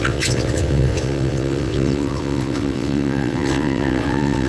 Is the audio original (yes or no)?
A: no